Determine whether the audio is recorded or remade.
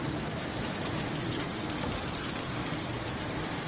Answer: recorded